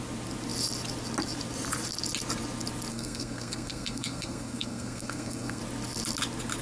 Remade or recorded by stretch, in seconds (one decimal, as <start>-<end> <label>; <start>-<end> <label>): 0.0-2.9 recorded; 2.9-5.6 remade; 5.6-6.6 recorded